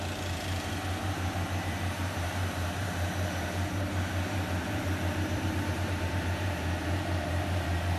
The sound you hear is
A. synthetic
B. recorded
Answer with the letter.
A